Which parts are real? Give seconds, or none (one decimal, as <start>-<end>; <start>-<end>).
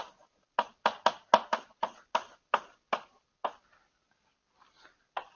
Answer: 0.0-5.3